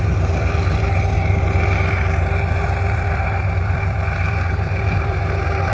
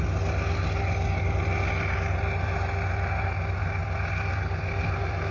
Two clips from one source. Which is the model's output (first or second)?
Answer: first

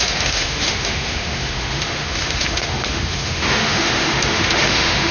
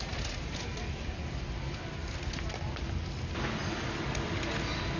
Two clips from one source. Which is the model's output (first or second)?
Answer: first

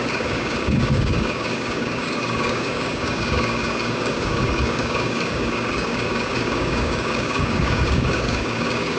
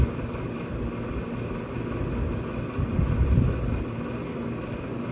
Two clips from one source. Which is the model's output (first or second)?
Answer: first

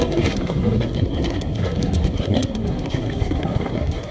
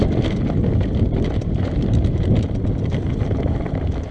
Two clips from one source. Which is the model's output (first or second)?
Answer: first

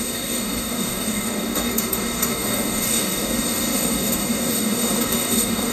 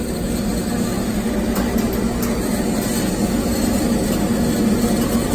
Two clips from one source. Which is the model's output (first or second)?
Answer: first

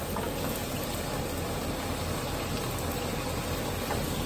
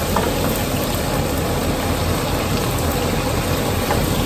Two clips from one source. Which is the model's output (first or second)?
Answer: second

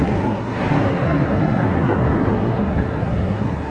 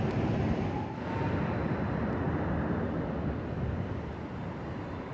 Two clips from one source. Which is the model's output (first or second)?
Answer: first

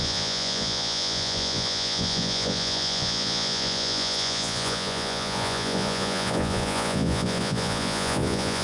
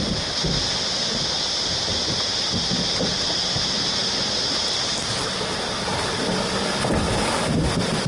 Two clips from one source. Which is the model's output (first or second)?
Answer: first